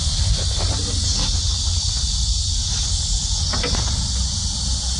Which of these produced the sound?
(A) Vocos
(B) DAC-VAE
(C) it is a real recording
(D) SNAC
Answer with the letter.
C